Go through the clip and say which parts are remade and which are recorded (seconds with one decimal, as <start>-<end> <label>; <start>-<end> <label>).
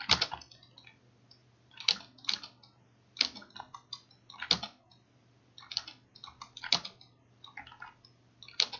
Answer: 0.0-1.4 recorded; 1.4-2.0 remade; 2.0-8.8 recorded